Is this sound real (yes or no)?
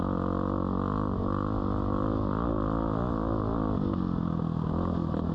yes